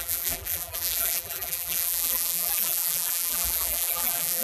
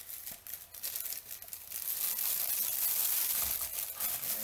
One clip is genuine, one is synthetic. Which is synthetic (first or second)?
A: first